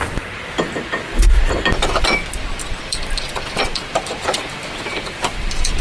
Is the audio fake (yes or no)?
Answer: yes